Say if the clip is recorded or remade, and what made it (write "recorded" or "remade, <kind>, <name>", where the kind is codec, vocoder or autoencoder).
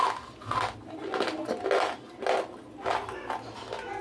recorded